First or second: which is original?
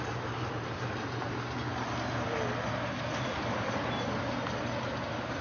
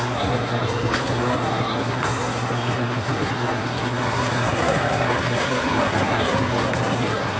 first